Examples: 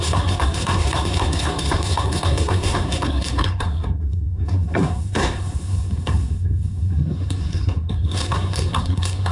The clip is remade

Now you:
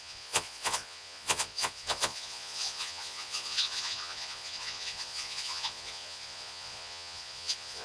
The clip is remade